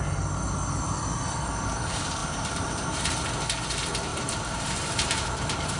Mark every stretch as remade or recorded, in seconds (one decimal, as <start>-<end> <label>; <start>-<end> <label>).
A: 0.0-2.2 recorded; 2.2-3.3 remade; 3.3-4.1 recorded; 4.1-5.8 remade